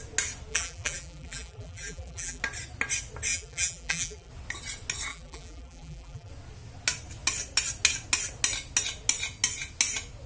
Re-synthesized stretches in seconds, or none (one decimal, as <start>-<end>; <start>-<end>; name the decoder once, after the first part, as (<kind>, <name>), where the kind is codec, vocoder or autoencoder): 0.5-2.4 (vocoder, BigVGAN v2); 3.3-4.3; 5.1-6.3